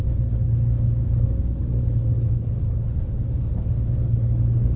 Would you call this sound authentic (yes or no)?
no